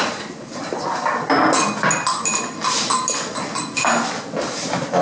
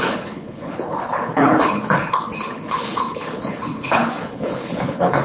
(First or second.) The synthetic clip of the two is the second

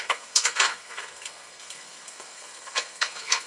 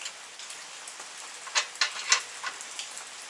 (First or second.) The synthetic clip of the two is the first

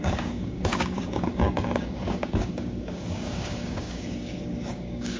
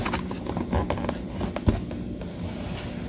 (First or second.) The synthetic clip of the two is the first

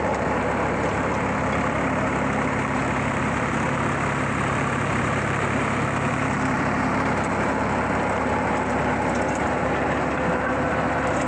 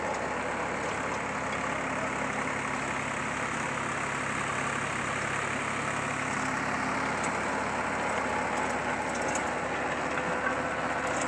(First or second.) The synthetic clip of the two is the first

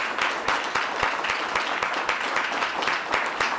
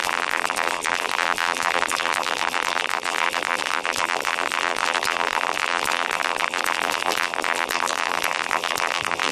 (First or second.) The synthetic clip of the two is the second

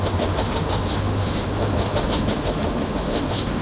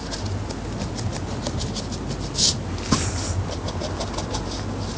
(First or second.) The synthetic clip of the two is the first